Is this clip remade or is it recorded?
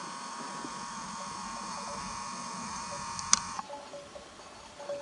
recorded